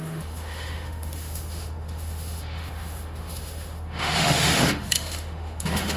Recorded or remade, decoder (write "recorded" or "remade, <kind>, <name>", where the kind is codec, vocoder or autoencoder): remade, autoencoder, DAC-VAE